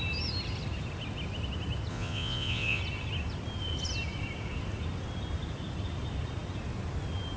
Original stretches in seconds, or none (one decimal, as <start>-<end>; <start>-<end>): 0.0-1.9; 2.8-7.4